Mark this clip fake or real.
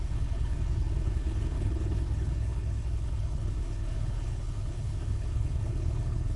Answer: fake